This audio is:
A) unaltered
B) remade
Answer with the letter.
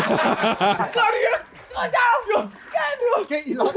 A